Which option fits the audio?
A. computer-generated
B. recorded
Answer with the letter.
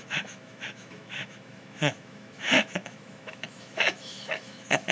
A